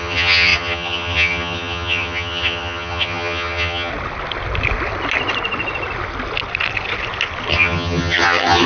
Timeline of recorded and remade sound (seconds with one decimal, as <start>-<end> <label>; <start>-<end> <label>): 0.0-3.9 remade; 3.9-7.5 recorded; 7.5-8.7 remade